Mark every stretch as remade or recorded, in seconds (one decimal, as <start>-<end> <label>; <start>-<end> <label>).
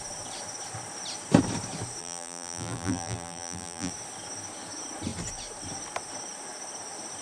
0.0-2.0 recorded; 2.0-3.9 remade; 3.9-7.2 recorded